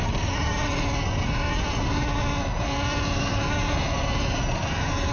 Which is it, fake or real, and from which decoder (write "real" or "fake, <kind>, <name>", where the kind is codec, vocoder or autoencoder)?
real